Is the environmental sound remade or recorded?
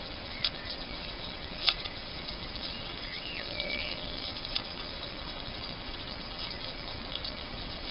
remade